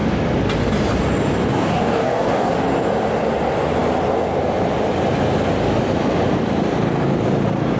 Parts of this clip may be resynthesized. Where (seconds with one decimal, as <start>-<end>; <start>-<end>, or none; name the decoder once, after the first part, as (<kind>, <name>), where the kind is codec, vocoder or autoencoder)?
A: 1.5-2.5 (codec, DAC)